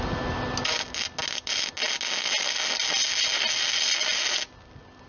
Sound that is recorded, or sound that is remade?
recorded